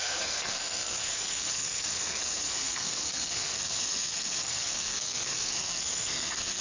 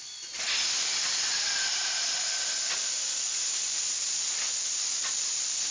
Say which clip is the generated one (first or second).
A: first